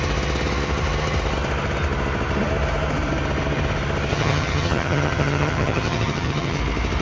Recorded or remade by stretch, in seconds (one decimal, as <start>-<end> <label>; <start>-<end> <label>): 0.0-4.1 recorded; 4.1-6.6 remade; 6.6-7.0 recorded